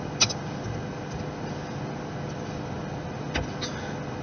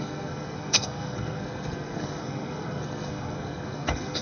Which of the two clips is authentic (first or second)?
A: first